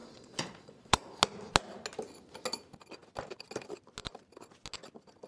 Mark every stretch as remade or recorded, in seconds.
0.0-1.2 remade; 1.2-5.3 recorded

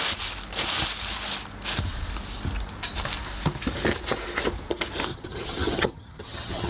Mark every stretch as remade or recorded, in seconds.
0.0-5.1 recorded; 5.1-6.7 remade

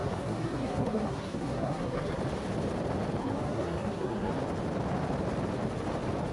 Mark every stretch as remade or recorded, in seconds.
0.0-2.2 remade; 2.2-3.2 recorded; 3.2-4.3 remade; 4.3-6.3 recorded

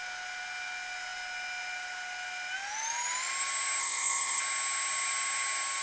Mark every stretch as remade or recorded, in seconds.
0.0-3.8 recorded; 3.8-4.4 remade; 4.4-5.8 recorded